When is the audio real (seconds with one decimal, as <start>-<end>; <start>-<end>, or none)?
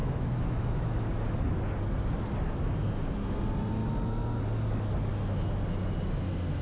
1.1-6.6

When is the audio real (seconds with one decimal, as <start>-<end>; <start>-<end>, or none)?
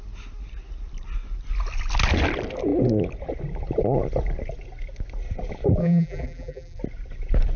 0.0-5.8; 6.8-7.6